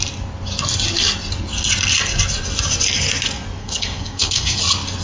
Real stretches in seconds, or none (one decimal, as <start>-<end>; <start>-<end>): 0.0-3.6; 4.6-5.0